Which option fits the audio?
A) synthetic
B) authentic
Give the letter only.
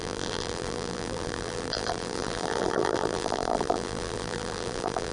A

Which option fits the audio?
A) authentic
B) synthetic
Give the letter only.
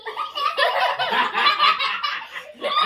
A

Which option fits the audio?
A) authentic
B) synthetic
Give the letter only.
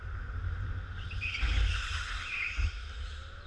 A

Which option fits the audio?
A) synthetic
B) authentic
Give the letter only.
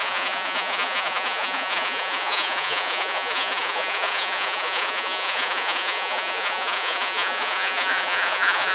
A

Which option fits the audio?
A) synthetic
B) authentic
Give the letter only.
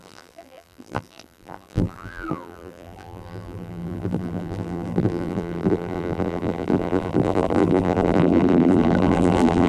A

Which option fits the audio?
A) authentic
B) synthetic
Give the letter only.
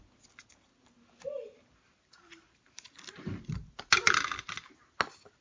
A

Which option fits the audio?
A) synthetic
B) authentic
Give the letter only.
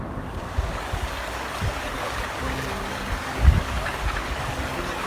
A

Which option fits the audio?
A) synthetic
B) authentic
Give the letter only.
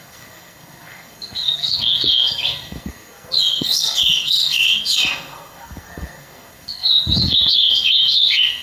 A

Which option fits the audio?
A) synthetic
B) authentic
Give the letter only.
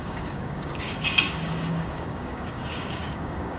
A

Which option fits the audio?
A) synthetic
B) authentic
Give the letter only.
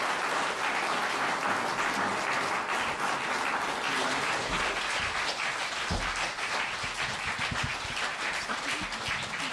B